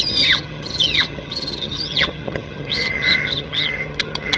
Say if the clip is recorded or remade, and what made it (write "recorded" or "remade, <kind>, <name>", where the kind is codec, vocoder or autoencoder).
remade, vocoder, HiFi-GAN